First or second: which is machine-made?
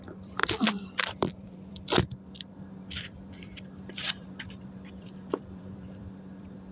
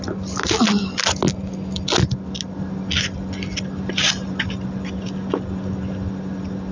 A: first